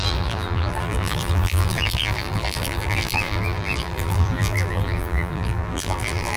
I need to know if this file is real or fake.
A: fake